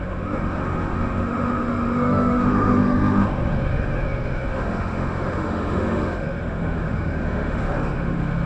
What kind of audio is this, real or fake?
fake